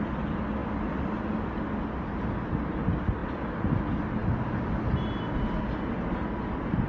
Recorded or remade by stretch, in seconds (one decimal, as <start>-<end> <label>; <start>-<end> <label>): 0.0-6.9 recorded